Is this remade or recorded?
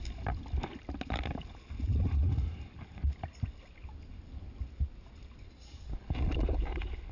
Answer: recorded